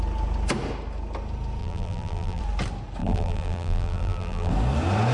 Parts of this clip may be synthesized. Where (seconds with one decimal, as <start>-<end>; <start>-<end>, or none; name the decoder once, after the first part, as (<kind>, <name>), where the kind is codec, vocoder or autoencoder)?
1.6-2.4 (vocoder, BigVGAN v2); 3.0-4.5